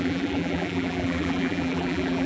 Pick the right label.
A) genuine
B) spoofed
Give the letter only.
B